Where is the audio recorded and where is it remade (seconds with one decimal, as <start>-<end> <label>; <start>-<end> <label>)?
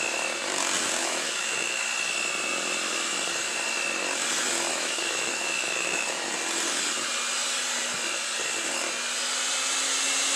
0.0-1.0 recorded; 1.0-1.8 remade; 1.8-4.7 recorded; 4.7-6.3 remade; 6.3-10.4 recorded